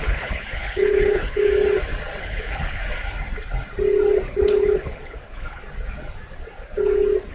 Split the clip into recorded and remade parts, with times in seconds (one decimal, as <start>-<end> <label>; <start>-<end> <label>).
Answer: 0.0-1.5 remade; 1.5-2.2 recorded; 2.2-2.8 remade; 2.8-4.3 recorded; 4.3-5.6 remade; 5.6-7.3 recorded